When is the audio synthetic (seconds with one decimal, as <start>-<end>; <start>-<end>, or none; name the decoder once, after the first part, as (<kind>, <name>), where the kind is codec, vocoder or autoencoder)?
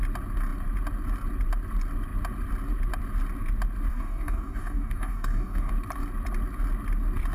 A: 3.9-5.7 (codec, DAC)